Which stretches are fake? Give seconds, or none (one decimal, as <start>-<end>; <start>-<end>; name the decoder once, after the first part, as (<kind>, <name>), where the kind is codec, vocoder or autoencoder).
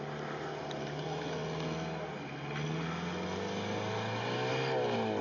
none